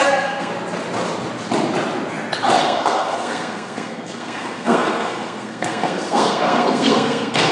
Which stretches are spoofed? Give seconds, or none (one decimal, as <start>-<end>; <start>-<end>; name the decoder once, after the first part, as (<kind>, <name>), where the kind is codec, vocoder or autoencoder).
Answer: 0.0-0.5 (codec, SNAC); 2.6-7.5